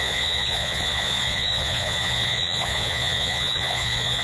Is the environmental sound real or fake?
fake